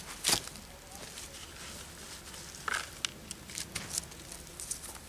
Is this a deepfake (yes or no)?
no